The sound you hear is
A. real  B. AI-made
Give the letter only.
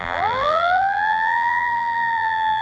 B